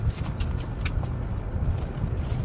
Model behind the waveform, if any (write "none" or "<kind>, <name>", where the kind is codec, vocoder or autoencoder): none